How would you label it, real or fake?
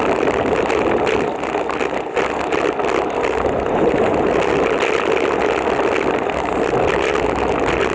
real